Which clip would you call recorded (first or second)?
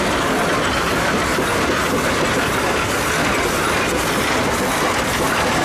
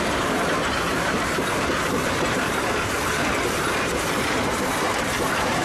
first